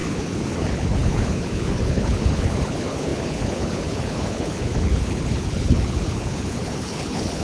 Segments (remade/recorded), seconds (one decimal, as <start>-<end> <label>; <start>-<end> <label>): 0.0-7.4 remade